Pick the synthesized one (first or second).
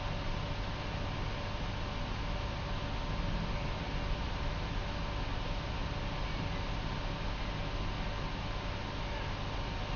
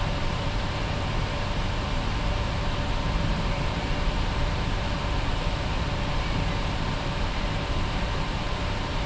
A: second